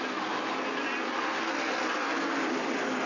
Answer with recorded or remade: recorded